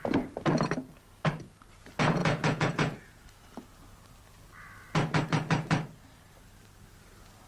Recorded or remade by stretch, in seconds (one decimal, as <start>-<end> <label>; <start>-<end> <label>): 0.0-2.2 recorded; 2.2-3.2 remade; 3.2-7.5 recorded